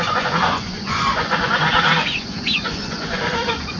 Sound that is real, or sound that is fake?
fake